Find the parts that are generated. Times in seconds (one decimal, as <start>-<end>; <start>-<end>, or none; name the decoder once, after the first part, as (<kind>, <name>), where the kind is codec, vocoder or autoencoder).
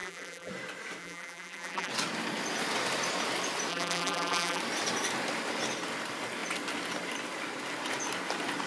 0.0-0.5 (vocoder, BigVGAN v2); 1.0-1.9; 3.7-4.6